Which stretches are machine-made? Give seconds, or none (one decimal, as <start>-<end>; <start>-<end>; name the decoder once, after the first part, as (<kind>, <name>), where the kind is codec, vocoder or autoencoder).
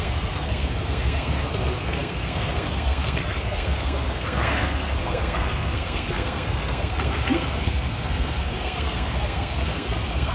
0.0-10.3 (codec, SNAC)